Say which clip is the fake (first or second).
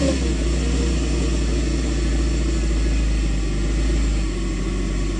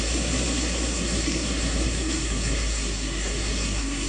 second